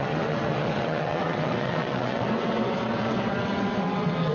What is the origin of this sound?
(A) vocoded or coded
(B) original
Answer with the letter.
A